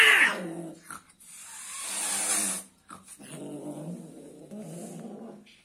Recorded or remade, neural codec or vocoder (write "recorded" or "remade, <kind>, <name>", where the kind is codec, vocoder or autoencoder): recorded